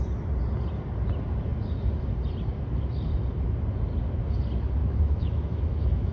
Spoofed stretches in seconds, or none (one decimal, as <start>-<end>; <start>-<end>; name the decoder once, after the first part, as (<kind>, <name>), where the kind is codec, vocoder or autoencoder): 4.8-6.1 (autoencoder, DAC-VAE)